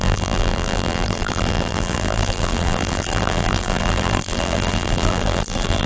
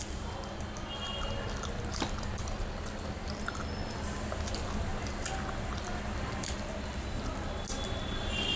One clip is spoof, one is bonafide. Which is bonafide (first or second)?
second